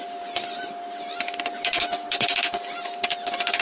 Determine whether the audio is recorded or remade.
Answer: recorded